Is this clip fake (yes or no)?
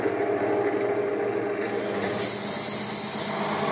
no